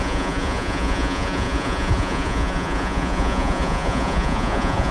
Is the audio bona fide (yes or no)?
no